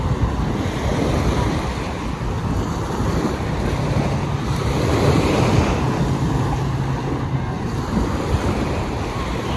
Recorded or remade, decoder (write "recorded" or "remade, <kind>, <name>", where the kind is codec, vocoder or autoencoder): recorded